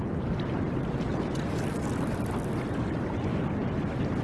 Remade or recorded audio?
recorded